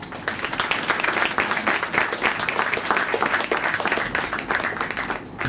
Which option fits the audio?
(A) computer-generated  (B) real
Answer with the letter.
B